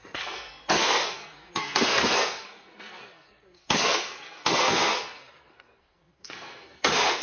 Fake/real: fake